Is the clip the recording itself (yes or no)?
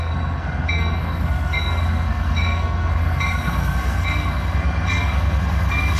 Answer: no